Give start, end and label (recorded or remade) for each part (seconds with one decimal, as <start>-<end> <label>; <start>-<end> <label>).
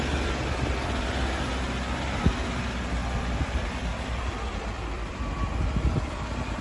0.0-3.0 recorded; 3.0-6.6 remade